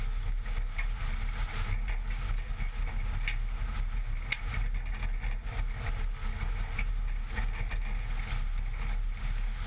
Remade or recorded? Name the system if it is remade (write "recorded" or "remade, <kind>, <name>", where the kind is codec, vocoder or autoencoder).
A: recorded